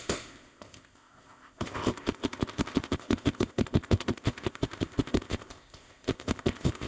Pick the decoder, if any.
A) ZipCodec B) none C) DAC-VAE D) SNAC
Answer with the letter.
A